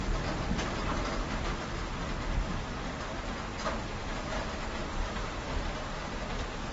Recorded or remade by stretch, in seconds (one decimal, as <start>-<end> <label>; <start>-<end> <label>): 0.0-6.7 recorded